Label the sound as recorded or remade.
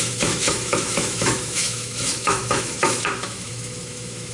remade